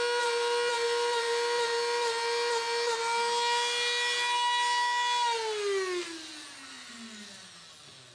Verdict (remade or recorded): recorded